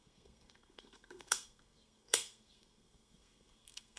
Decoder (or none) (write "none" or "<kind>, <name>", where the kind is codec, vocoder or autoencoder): codec, SNAC